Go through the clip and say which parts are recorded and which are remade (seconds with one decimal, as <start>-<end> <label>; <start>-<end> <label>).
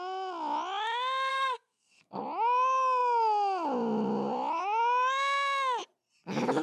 0.0-1.3 recorded; 1.3-2.2 remade; 2.2-6.6 recorded